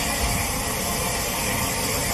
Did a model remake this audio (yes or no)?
no